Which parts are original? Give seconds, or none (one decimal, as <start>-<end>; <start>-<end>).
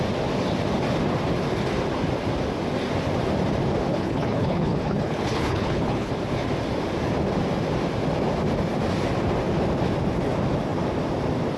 0.0-3.9; 6.1-11.6